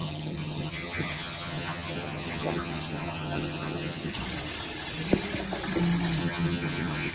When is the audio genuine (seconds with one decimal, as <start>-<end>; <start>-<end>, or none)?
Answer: 4.1-6.2